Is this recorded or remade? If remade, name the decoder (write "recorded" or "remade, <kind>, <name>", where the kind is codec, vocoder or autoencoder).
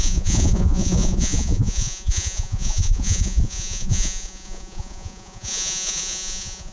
remade, vocoder, Vocos